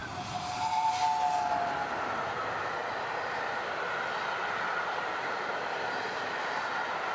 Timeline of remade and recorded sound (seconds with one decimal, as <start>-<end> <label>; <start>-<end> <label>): 0.0-7.1 recorded